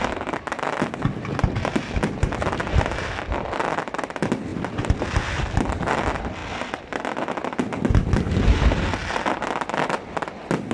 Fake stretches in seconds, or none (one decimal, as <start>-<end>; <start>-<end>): none